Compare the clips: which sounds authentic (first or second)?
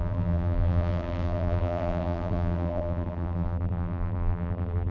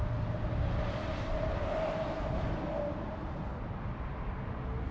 second